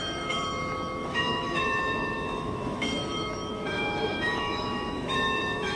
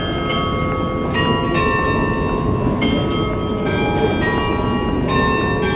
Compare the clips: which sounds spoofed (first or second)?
first